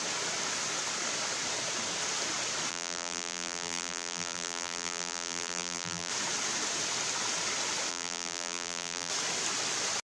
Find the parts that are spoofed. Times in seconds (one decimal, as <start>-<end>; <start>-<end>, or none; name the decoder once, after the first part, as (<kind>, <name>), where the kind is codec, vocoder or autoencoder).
2.7-6.1 (vocoder, BigVGAN v2); 7.9-9.1